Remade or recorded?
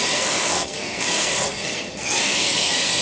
remade